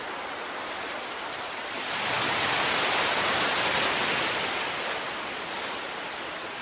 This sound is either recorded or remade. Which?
recorded